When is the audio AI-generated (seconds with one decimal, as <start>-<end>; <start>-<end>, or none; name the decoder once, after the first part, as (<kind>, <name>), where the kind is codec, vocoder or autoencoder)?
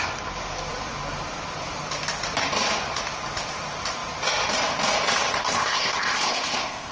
5.4-6.9 (codec, ZipCodec)